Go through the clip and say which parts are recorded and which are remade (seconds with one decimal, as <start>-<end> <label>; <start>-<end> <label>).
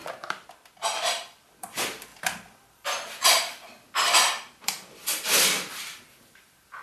0.0-0.7 recorded; 0.7-6.8 remade